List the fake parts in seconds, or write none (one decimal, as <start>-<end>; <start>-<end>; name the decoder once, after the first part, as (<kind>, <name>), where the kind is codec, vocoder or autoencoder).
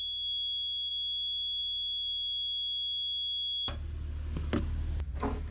none